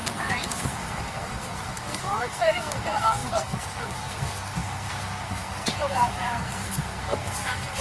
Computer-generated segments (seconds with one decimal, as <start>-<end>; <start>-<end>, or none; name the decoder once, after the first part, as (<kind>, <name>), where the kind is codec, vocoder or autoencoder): 0.0-7.8 (codec, SNAC)